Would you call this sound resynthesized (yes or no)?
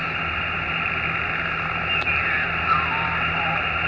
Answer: no